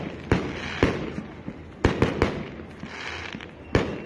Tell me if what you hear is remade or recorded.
recorded